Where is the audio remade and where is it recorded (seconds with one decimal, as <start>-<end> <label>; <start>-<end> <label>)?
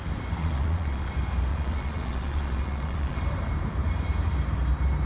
0.0-0.4 recorded; 0.4-1.1 remade; 1.1-1.5 recorded; 1.5-3.2 remade; 3.2-5.1 recorded